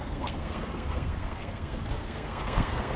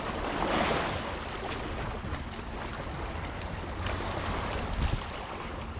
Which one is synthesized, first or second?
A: first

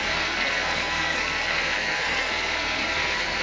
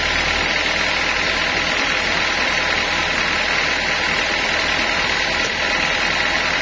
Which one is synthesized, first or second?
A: first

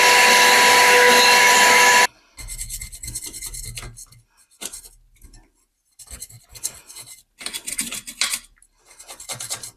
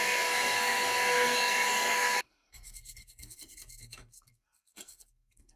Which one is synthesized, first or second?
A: second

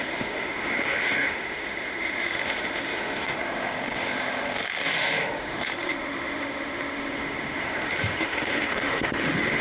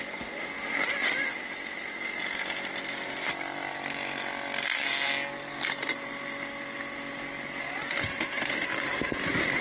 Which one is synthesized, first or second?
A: first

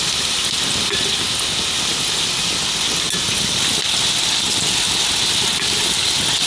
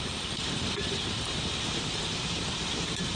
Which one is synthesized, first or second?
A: second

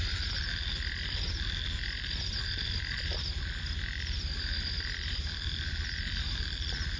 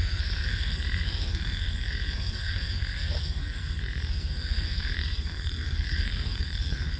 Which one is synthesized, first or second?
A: second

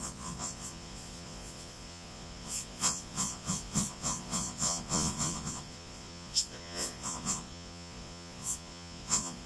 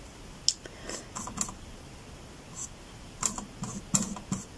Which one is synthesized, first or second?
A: first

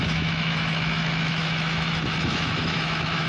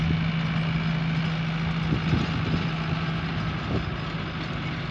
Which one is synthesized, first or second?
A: first